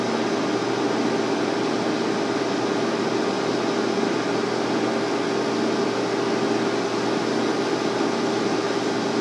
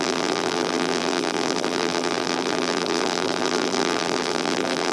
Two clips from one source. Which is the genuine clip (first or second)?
first